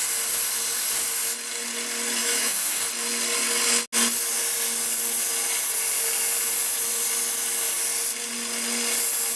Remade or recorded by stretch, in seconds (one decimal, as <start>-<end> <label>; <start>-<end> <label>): 0.0-2.2 recorded; 2.2-2.8 remade; 2.8-9.4 recorded